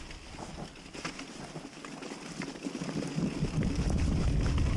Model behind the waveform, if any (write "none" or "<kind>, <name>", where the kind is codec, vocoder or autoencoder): none